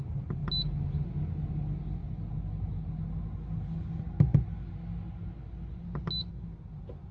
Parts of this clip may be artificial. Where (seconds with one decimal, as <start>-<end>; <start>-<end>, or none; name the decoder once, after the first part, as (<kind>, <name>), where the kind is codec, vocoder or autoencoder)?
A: none